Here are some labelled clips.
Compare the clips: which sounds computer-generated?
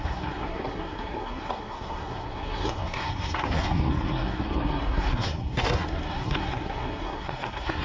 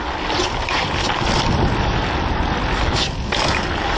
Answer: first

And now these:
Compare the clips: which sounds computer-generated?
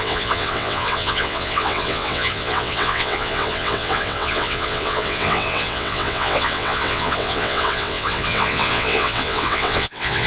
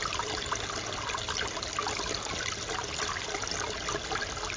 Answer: first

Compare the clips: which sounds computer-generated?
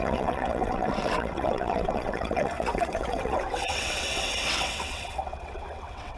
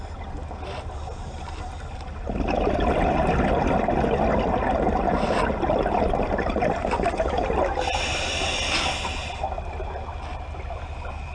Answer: first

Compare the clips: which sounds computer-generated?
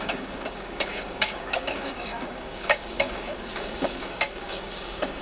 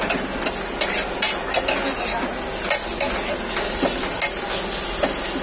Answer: first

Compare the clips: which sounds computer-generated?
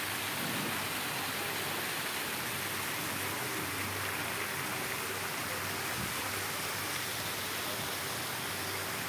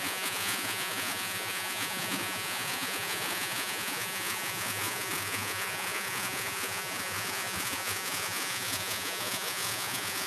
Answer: second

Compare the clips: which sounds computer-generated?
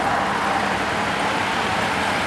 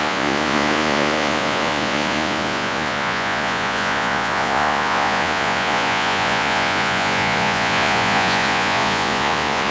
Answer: second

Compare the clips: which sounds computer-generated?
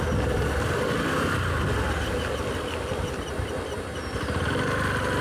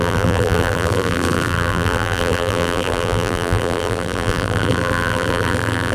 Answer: second